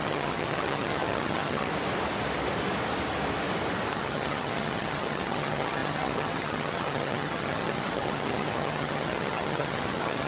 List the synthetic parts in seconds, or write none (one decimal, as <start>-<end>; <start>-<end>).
0.0-1.7; 3.9-10.3